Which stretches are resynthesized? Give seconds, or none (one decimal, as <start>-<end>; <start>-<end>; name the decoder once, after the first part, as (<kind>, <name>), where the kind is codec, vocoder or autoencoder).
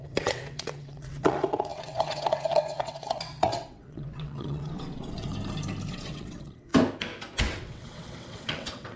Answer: 0.0-5.3 (vocoder, WaveNeXt); 5.9-6.7; 7.4-9.0